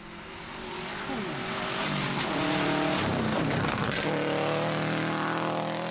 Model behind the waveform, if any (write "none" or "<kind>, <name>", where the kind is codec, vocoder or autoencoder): none